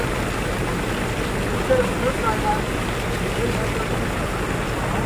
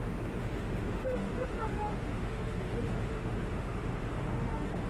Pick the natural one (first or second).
first